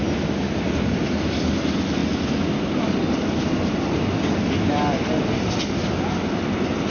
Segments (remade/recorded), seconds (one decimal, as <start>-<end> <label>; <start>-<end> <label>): 0.0-6.9 recorded